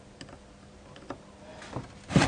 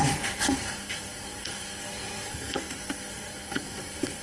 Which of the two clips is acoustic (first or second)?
first